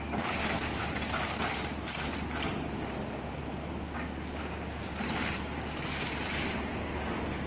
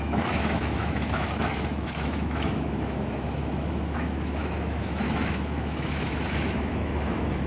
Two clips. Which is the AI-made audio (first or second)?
second